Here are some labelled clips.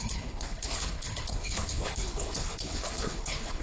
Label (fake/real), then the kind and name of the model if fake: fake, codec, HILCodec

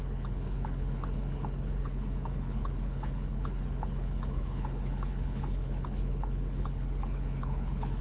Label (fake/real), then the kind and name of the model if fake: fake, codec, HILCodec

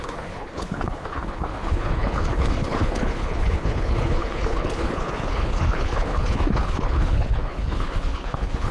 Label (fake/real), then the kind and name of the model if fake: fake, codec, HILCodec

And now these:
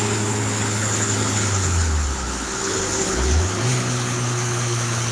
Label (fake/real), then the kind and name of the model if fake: fake, codec, HILCodec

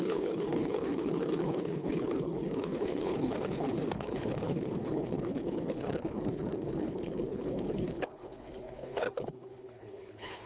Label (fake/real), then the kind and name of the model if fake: fake, codec, HILCodec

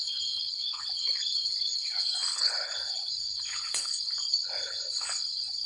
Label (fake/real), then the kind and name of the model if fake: fake, codec, HILCodec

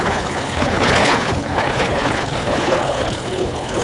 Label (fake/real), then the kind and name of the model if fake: fake, codec, HILCodec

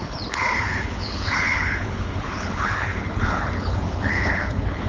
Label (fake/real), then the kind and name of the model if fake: fake, codec, HILCodec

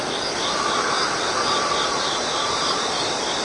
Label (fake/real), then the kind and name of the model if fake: real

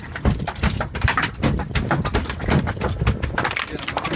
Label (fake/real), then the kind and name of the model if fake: real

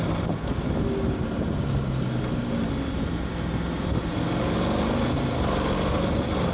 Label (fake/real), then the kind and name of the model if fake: real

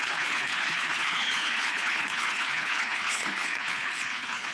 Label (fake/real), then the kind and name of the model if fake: fake, codec, HILCodec